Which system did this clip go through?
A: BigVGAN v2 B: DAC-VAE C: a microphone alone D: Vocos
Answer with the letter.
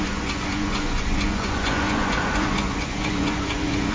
D